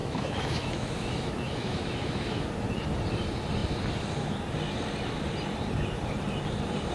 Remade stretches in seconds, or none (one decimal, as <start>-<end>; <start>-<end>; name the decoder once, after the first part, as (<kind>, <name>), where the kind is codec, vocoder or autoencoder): 0.0-2.5 (autoencoder, DAC-VAE)